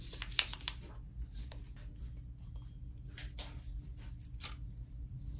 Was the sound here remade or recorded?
recorded